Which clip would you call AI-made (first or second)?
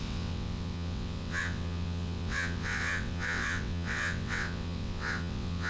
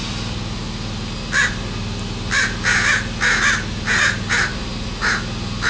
first